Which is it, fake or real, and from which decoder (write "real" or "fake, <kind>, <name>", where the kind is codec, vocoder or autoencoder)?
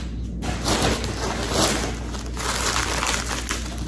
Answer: real